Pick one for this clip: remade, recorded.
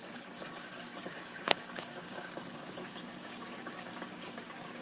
remade